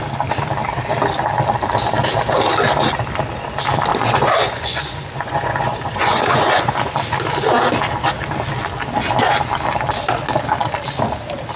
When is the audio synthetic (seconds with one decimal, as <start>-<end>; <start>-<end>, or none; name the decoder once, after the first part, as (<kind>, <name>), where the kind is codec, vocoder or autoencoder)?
3.9-6.9 (vocoder, Vocos)